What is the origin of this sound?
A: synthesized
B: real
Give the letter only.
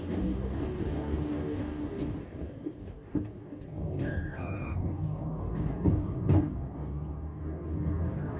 A